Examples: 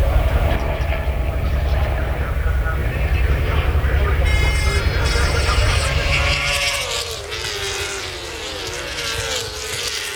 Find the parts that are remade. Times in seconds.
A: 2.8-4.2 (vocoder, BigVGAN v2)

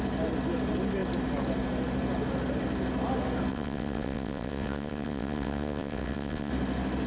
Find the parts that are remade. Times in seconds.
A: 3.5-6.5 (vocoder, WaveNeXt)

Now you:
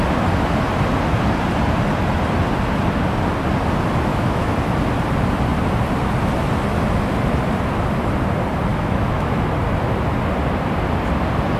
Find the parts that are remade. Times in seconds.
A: 4.1-4.7 (autoencoder, DAC-VAE); 8.7-9.5

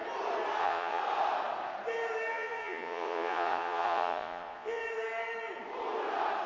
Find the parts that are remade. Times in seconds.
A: 0.6-1.0 (vocoder, Vocos); 2.3-4.8

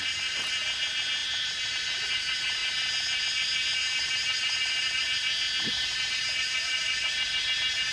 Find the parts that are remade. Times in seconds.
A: none

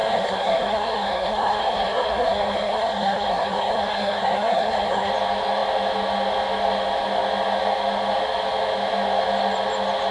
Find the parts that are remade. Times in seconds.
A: 0.0-5.1 (codec, SNAC)

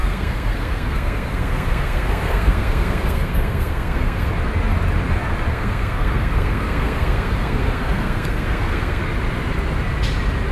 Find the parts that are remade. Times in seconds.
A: 0.0-4.3 (codec, SNAC); 5.5-9.0

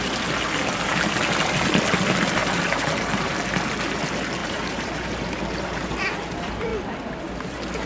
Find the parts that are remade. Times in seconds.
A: 4.4-5.9 (vocoder, BigVGAN v2)